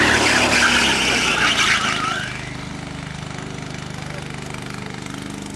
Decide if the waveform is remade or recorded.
recorded